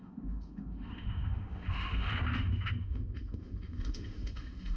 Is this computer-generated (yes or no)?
yes